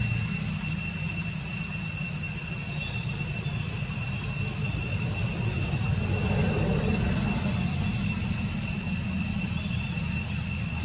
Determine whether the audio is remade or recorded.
recorded